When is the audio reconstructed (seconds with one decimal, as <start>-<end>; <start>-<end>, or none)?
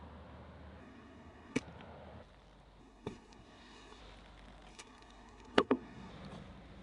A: 0.8-1.6; 2.8-4.0; 4.7-6.1